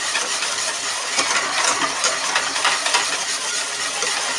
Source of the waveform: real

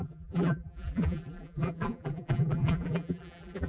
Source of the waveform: fake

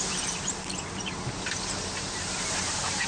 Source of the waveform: fake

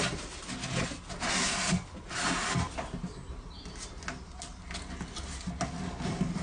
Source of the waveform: real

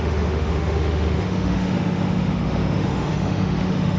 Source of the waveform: fake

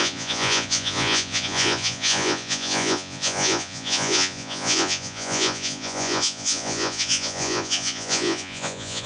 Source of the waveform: fake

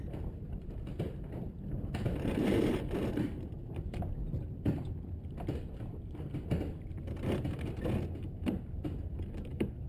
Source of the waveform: real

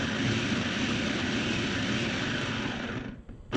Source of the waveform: fake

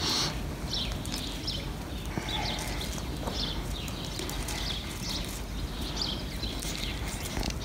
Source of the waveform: real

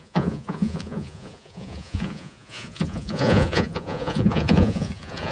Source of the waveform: fake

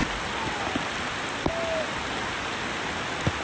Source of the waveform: real